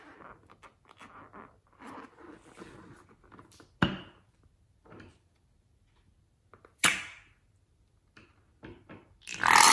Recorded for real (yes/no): yes